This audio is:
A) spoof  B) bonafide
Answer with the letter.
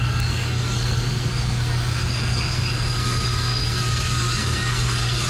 A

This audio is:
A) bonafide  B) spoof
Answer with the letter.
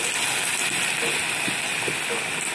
A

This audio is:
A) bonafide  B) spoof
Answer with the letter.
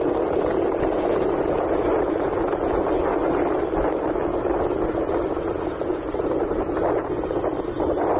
A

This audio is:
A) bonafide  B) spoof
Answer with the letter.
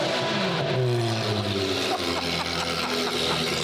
A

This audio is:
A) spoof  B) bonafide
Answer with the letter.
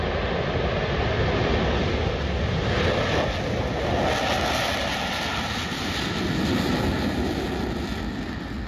B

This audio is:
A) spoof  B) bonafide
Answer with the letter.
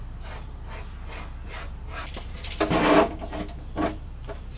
B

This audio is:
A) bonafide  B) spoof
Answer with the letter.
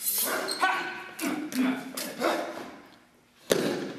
A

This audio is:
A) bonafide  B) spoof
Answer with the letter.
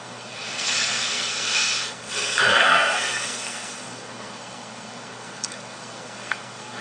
B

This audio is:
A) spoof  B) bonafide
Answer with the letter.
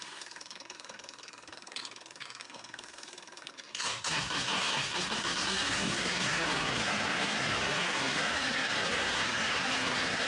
A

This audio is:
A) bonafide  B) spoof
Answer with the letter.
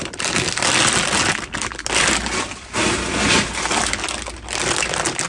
A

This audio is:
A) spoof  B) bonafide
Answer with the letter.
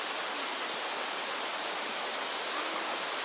B